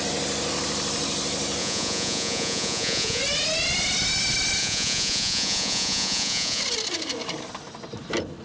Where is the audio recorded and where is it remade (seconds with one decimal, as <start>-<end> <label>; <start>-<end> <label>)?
0.0-1.6 recorded; 1.6-3.2 remade; 3.2-4.6 recorded; 4.6-6.6 remade; 6.6-8.4 recorded